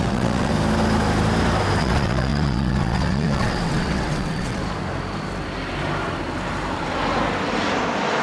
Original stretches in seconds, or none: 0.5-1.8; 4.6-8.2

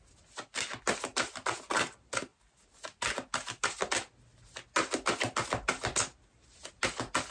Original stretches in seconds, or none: 0.0-7.3